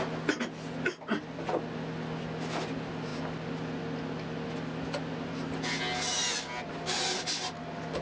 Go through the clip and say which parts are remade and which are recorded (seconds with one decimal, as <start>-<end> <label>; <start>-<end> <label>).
0.0-8.0 recorded